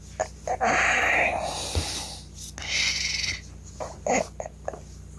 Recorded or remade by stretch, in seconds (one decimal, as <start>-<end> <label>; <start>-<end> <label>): 0.0-5.2 recorded